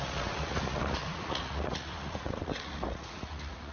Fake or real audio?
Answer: fake